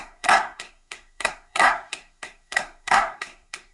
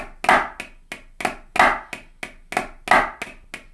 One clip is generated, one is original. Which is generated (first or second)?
first